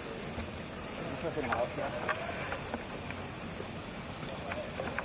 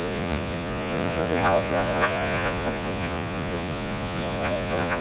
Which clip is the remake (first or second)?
second